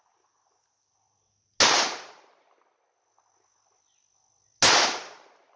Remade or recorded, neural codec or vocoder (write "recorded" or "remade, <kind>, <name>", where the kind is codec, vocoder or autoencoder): recorded